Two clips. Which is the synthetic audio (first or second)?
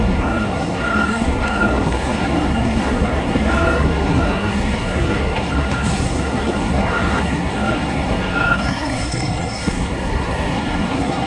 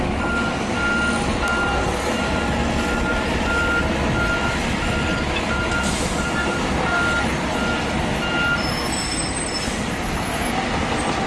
first